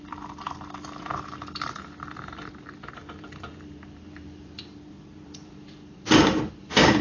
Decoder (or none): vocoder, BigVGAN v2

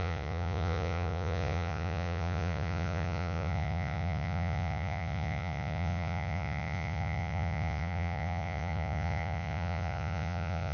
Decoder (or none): vocoder, Vocos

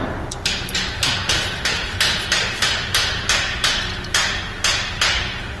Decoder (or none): none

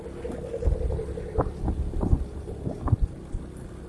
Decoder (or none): none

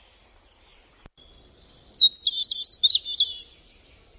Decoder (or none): none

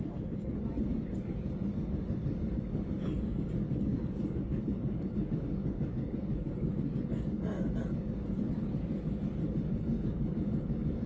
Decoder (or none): codec, DAC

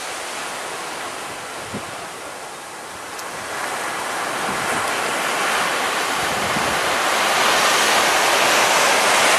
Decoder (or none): none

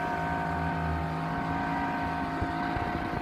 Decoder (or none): none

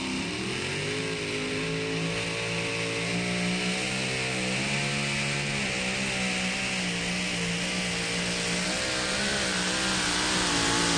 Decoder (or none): none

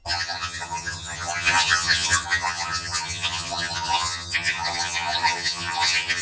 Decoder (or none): vocoder, HiFi-GAN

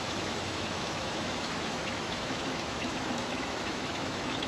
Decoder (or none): autoencoder, DAC-VAE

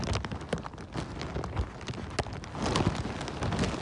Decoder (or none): none